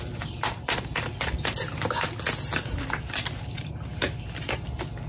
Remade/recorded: recorded